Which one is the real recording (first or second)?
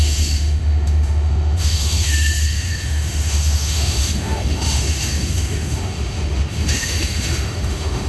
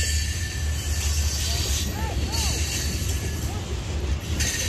second